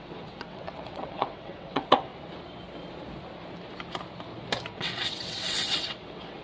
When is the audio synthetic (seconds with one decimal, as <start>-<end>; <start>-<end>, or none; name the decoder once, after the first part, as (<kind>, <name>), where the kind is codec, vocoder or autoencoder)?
0.0-2.1 (vocoder, WaveNeXt); 4.7-6.4